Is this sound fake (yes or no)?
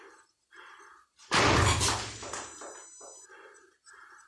no